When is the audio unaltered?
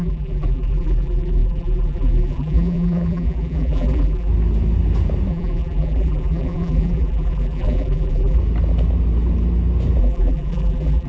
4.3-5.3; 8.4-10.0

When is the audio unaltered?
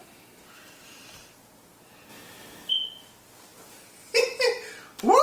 0.0-2.1; 2.7-5.2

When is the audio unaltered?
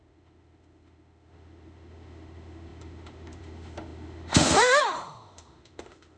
none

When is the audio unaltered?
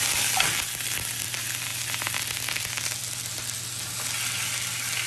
0.0-5.1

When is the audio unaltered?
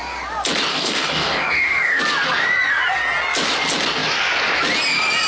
0.0-0.7; 2.0-5.3